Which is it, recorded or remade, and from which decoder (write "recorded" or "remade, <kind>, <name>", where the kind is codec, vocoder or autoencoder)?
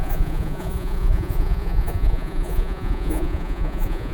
remade, vocoder, Vocos